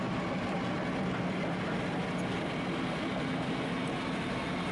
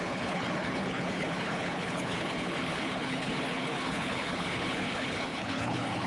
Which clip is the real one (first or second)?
first